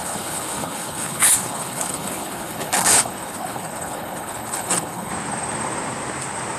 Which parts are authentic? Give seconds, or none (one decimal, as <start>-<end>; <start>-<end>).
5.1-6.6